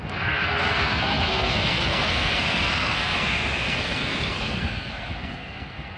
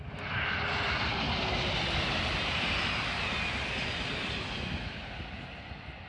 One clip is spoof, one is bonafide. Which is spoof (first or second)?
first